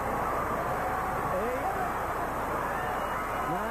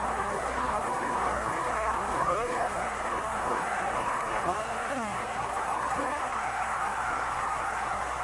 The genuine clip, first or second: first